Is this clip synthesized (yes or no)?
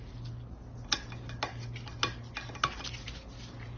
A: no